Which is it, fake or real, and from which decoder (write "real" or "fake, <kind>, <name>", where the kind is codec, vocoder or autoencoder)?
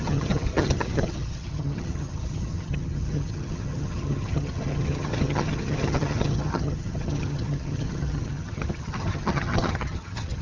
fake, vocoder, HiFi-GAN